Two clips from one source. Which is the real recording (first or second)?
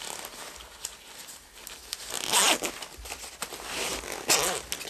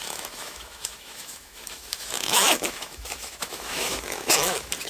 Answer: first